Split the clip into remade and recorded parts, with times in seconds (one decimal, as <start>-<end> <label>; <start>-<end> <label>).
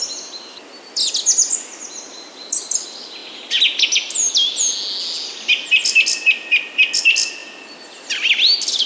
0.0-8.9 recorded